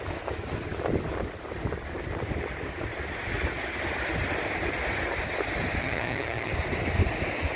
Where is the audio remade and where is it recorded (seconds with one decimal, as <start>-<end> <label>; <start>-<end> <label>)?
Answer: 0.0-5.8 recorded; 5.8-6.5 remade; 6.5-7.6 recorded